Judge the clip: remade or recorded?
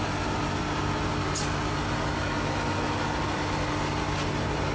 recorded